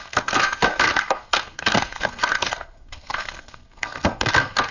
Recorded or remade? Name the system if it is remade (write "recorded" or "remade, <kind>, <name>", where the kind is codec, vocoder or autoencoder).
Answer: remade, codec, SNAC